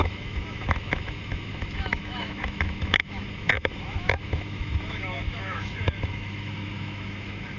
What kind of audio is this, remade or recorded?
remade